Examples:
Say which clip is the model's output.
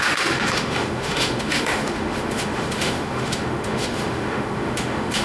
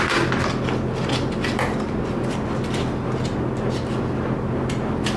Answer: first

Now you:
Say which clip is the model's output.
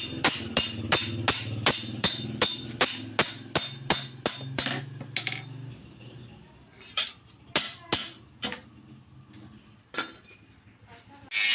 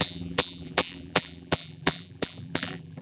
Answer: second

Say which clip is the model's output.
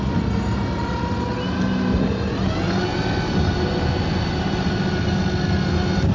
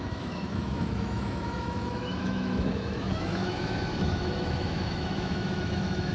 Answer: second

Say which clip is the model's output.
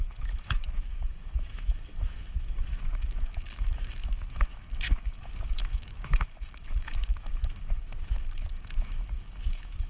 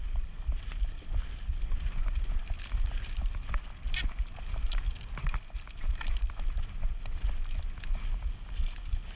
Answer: first